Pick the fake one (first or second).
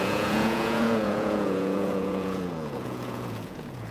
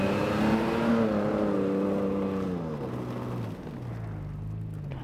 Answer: first